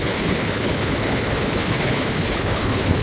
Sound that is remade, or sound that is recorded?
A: remade